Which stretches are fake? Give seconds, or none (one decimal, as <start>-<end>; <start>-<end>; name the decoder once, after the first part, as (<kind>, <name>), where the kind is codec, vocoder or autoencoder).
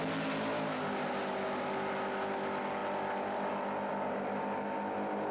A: none